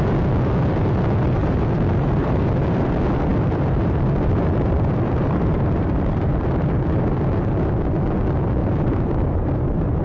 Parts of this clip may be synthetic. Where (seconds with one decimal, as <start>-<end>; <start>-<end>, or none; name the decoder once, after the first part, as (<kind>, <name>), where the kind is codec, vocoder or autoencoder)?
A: 1.4-2.9 (vocoder, BigVGAN v2); 3.3-7.2; 8.6-10.0